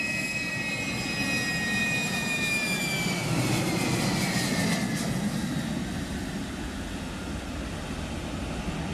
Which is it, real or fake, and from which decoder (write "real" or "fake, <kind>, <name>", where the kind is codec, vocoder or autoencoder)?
real